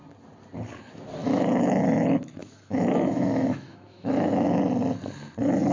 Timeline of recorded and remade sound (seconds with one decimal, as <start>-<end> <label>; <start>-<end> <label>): 0.0-1.2 recorded; 1.2-1.8 remade; 1.8-2.4 recorded; 2.4-4.6 remade; 4.6-5.7 recorded